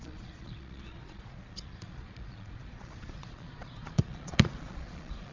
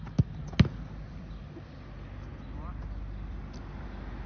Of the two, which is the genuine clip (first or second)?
second